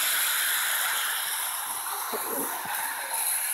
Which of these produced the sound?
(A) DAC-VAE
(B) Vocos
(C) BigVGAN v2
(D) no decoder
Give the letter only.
D